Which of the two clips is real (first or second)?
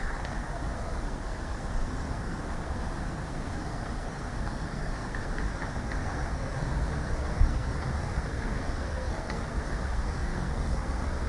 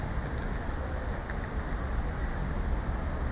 second